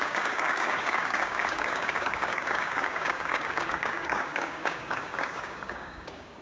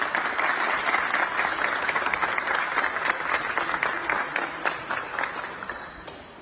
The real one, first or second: second